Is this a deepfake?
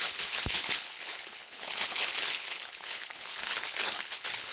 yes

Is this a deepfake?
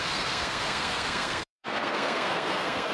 yes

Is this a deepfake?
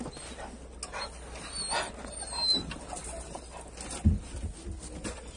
no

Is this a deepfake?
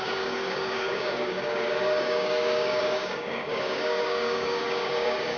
yes